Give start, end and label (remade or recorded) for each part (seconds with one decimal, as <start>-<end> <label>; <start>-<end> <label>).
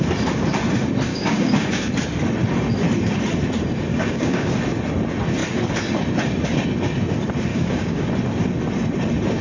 0.0-1.1 recorded; 1.1-1.8 remade; 1.8-3.9 recorded; 3.9-4.5 remade; 4.5-7.5 recorded; 7.5-8.1 remade; 8.1-9.4 recorded